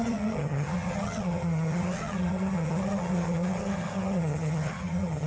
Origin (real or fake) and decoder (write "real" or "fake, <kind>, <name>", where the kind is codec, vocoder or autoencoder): fake, vocoder, HiFi-GAN